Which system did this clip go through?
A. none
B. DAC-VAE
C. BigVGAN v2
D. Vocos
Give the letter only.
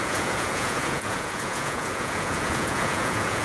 D